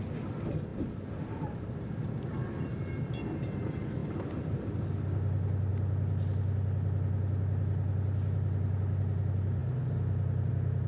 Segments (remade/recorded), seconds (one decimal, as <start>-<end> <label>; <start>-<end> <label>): 0.0-10.9 recorded